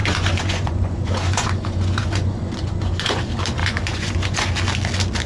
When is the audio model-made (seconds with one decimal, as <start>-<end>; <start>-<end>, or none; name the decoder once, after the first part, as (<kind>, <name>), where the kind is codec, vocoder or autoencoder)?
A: 0.0-3.2 (vocoder, Vocos); 3.6-4.5